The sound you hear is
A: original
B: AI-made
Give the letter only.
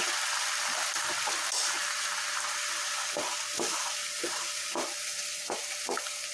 A